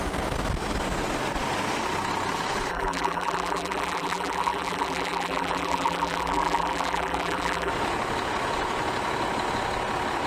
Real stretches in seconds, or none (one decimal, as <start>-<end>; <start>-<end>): 0.0-2.7; 7.7-10.3